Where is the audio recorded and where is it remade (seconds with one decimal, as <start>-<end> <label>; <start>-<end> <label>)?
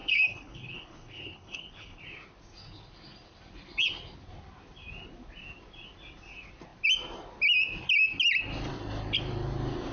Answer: 0.0-2.0 remade; 2.0-9.9 recorded